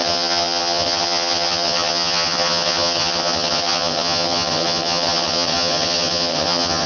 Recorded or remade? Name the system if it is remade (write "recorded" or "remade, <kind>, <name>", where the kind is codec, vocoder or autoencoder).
remade, vocoder, HiFi-GAN